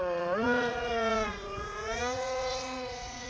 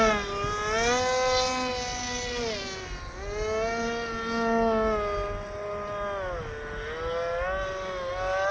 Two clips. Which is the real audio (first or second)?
second